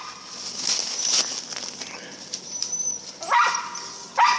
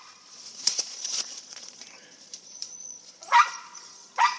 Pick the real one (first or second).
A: first